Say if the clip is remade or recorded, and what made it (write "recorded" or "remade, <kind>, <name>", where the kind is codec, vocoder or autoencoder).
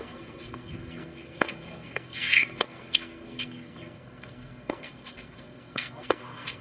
remade, codec, SNAC